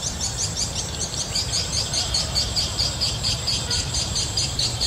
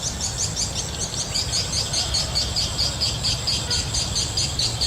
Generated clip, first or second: first